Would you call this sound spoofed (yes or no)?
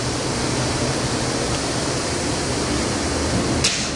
no